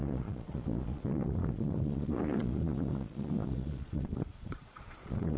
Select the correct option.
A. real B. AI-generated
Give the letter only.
B